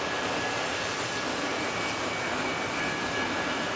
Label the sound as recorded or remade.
recorded